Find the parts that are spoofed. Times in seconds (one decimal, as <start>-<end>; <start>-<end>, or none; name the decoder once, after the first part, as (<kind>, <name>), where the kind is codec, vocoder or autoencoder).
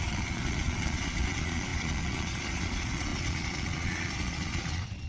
0.0-5.1 (vocoder, Vocos)